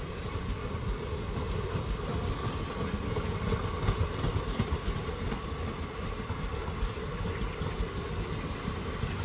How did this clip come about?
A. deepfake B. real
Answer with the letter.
B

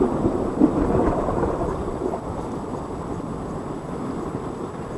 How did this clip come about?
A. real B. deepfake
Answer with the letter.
A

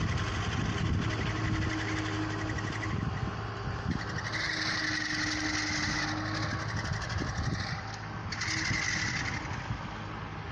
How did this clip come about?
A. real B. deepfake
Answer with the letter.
A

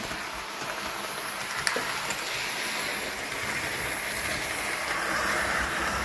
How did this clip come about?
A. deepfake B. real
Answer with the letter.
B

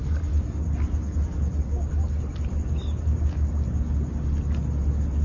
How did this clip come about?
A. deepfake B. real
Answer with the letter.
B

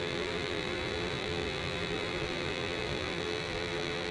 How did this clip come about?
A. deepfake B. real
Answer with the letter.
A